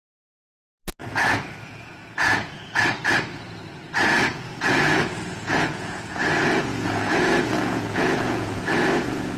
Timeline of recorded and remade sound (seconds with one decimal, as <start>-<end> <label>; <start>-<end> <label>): 0.0-1.0 recorded; 1.0-2.8 remade; 2.8-4.3 recorded; 4.3-6.2 remade; 6.2-6.7 recorded; 6.7-8.6 remade; 8.6-9.4 recorded